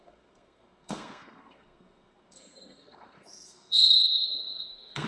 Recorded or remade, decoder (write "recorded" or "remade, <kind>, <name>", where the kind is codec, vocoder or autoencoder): remade, codec, SNAC